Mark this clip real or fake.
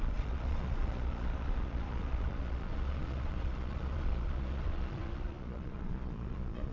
fake